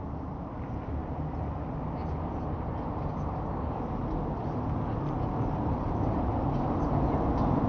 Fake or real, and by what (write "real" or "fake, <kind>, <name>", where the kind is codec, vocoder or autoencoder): real